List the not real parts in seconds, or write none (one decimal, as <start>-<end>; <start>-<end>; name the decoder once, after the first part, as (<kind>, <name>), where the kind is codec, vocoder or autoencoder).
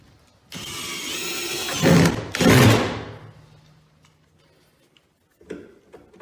none